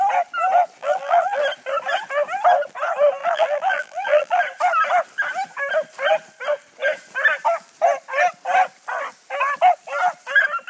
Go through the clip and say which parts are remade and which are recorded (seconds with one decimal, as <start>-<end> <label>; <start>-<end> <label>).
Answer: 0.0-0.8 recorded; 0.8-1.4 remade; 1.4-3.2 recorded; 3.2-4.4 remade; 4.4-10.7 recorded